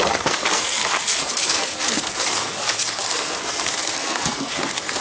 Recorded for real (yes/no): no